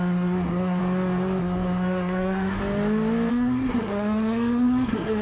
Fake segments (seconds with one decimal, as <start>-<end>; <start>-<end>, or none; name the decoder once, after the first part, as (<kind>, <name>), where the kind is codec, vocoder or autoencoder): 0.0-0.8 (codec, SNAC); 1.4-2.6; 3.3-5.2